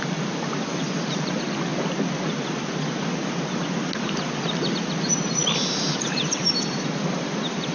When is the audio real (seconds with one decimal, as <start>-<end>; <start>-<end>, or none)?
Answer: 1.7-6.0